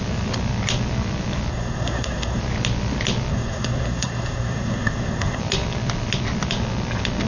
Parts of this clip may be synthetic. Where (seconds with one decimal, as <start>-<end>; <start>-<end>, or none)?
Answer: 1.5-2.4; 3.3-5.4